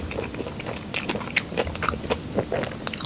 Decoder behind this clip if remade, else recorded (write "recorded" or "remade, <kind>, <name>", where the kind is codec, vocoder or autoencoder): recorded